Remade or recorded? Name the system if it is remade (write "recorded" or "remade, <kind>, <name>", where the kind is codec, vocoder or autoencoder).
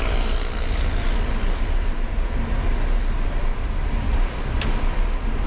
recorded